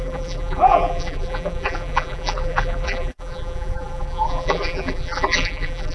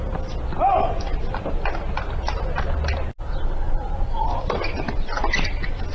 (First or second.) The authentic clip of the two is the second